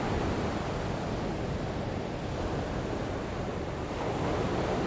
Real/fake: real